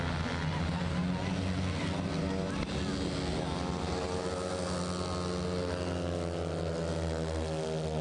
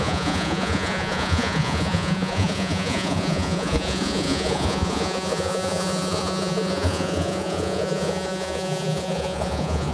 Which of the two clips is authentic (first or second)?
first